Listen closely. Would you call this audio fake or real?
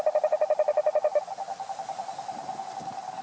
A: real